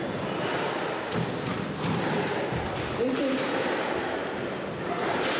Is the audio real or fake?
real